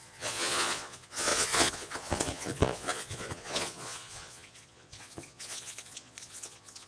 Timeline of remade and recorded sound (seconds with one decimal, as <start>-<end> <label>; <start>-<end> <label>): 0.0-6.9 remade